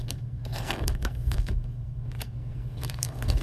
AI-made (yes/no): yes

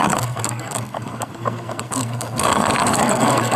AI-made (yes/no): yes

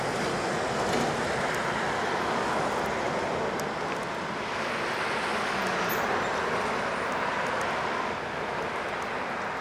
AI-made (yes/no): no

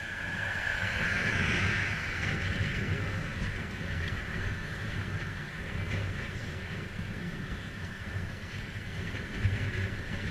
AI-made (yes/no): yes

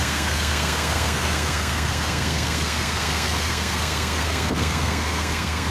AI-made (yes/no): yes